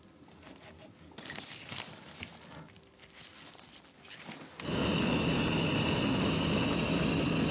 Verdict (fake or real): real